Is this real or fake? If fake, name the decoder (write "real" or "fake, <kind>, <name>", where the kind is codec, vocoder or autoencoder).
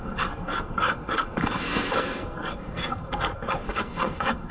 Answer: fake, codec, SNAC